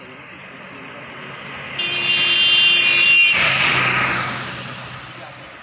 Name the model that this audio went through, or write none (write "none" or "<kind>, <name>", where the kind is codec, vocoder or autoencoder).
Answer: none